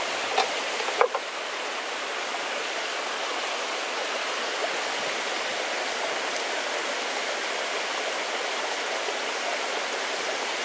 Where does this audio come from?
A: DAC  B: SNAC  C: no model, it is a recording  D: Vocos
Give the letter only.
C